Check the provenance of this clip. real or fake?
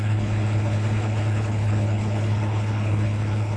fake